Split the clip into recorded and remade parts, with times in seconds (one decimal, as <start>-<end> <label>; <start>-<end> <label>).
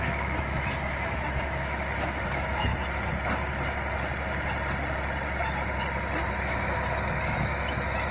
0.0-2.7 remade; 2.7-6.4 recorded; 6.4-8.1 remade